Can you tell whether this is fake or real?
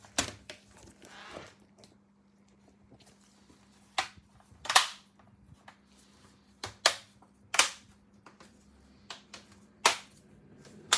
real